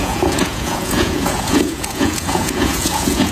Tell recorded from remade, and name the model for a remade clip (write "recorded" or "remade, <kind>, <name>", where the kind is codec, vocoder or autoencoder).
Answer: remade, vocoder, Vocos